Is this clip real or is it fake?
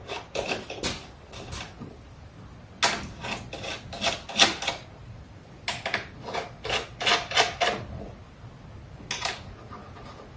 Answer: real